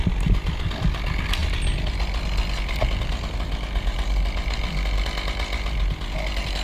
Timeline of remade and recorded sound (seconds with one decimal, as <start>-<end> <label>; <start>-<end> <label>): 0.0-6.6 recorded